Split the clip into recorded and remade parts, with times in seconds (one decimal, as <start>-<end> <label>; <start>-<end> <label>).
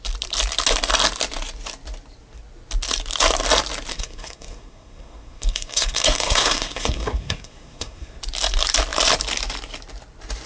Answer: 0.0-3.9 recorded; 3.9-8.2 remade; 8.2-10.5 recorded